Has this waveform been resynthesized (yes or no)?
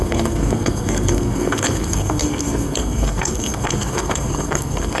yes